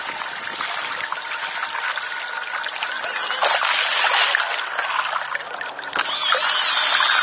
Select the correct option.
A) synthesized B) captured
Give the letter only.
B